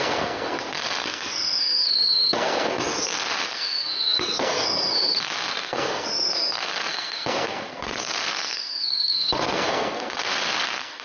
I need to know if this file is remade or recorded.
remade